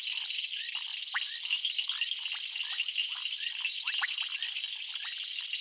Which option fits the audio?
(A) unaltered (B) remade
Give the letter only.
A